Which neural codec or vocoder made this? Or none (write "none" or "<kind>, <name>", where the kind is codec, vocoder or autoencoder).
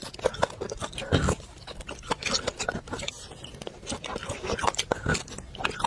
none